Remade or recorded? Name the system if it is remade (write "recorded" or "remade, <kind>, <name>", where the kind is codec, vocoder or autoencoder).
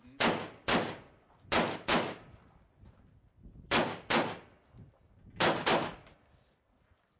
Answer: recorded